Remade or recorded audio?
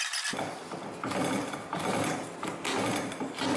recorded